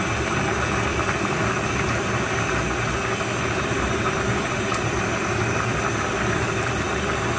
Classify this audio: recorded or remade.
recorded